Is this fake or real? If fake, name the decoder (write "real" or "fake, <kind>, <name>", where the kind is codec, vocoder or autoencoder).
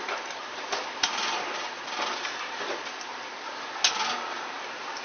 real